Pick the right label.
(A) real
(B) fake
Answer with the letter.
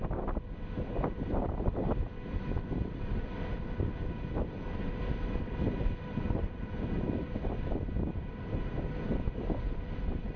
A